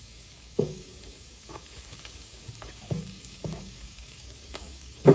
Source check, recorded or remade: remade